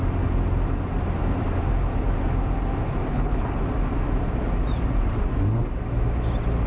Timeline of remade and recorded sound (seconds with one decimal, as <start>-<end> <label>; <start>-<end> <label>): 0.0-3.1 recorded; 3.1-3.6 remade; 3.6-6.7 recorded